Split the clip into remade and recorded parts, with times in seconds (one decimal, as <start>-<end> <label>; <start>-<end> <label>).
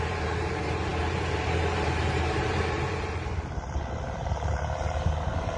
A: 0.0-5.6 remade